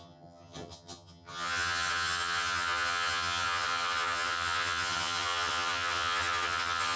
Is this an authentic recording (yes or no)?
no